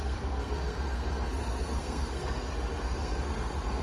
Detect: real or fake fake